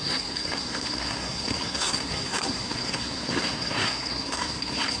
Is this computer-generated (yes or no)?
yes